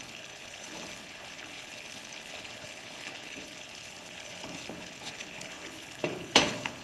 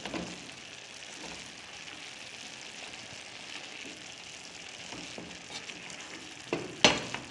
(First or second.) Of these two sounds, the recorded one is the second